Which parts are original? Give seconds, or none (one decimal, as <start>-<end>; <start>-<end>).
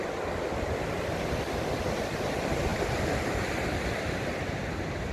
0.0-5.1